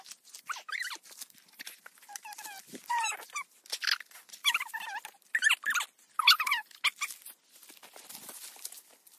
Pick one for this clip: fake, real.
real